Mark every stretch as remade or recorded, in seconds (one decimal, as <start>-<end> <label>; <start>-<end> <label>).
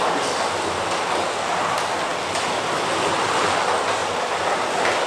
0.0-2.1 recorded; 2.1-3.1 remade; 3.1-4.0 recorded; 4.0-5.1 remade